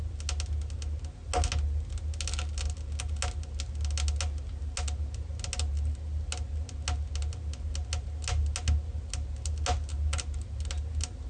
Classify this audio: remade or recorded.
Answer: recorded